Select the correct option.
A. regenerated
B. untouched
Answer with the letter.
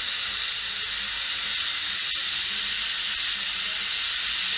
B